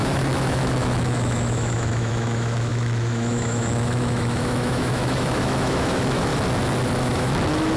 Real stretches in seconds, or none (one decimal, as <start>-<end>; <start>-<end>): 6.3-7.0